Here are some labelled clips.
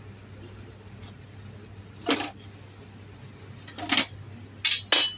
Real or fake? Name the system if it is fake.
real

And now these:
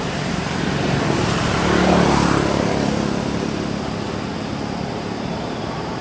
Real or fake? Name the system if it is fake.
fake, vocoder, BigVGAN v2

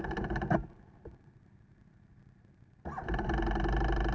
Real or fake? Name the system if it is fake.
real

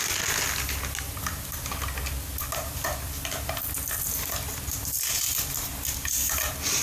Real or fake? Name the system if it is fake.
real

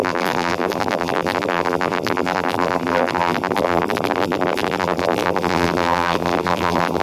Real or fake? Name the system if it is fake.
fake, vocoder, BigVGAN v2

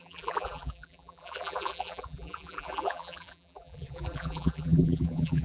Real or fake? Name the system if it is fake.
fake, vocoder, BigVGAN v2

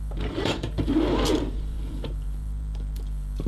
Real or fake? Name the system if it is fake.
fake, vocoder, BigVGAN v2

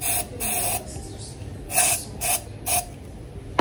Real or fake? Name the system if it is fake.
real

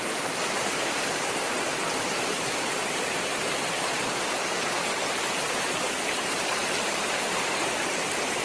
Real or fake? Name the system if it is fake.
fake, vocoder, BigVGAN v2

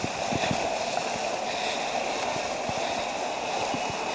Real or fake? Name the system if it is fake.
real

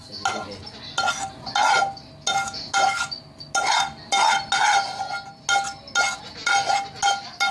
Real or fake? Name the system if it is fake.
real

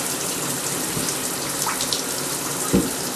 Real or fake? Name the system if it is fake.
real